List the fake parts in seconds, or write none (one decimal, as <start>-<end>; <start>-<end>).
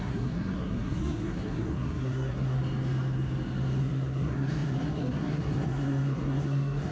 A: 0.0-2.6; 3.8-6.9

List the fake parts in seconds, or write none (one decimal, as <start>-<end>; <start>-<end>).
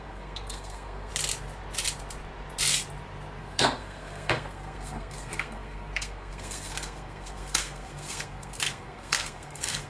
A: 0.0-1.1; 3.4-9.9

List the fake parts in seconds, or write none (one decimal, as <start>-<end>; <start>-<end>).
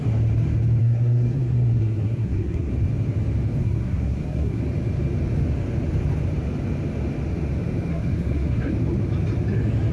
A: 0.8-2.7; 3.6-4.6; 7.9-8.7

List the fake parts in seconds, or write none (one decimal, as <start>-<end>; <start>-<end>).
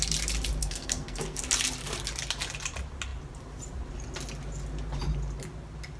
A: 0.6-1.4